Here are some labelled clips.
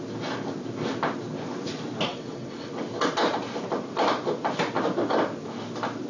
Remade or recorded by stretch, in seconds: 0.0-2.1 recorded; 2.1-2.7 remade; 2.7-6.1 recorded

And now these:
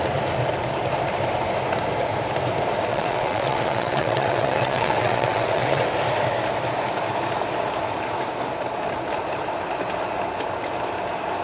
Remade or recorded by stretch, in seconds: 0.0-2.9 recorded; 2.9-5.8 remade; 5.8-11.4 recorded